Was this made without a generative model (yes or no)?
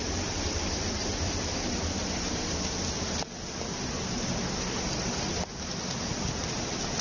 yes